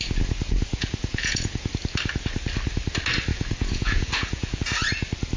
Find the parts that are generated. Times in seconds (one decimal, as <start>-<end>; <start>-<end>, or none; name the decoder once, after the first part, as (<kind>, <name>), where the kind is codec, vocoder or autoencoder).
0.7-1.7 (vocoder, Vocos); 3.3-4.6